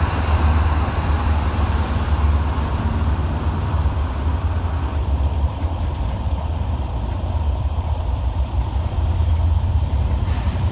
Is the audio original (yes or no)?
no